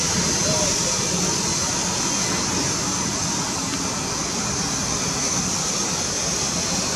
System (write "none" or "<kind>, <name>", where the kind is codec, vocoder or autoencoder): none